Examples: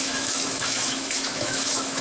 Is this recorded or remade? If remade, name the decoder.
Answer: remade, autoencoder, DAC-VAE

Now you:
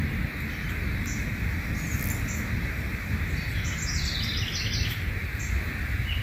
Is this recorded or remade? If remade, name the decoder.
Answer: recorded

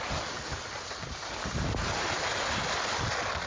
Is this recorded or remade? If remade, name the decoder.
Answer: recorded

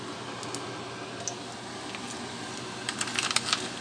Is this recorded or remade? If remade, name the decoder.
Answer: recorded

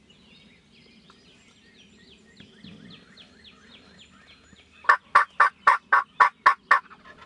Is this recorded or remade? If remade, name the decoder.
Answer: recorded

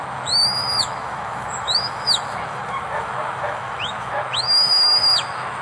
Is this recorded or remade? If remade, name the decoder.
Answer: remade, autoencoder, DAC-VAE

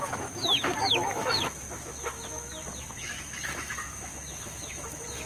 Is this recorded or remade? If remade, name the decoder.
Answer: remade, autoencoder, DAC-VAE